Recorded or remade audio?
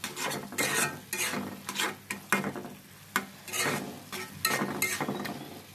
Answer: recorded